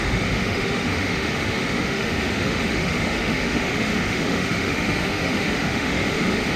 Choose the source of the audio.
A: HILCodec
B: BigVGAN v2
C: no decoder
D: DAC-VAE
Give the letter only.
D